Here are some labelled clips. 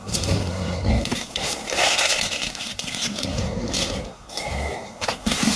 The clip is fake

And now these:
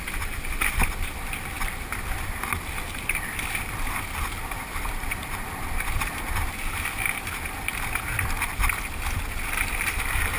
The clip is fake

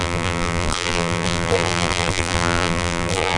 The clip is fake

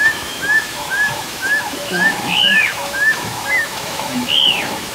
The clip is fake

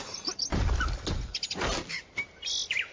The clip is real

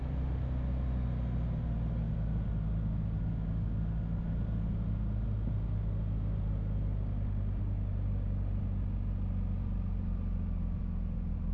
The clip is real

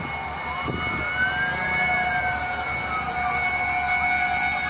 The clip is real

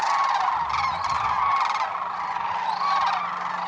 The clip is real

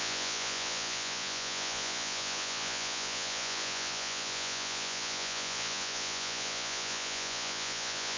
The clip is fake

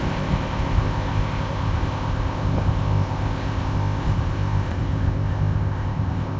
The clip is fake